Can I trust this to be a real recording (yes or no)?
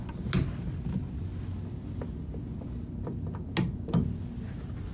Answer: yes